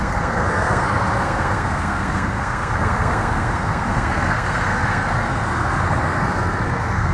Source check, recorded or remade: remade